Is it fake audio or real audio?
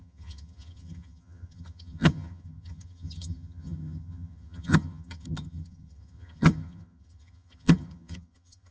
fake